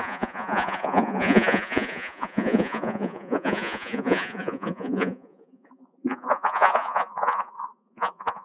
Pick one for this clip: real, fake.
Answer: fake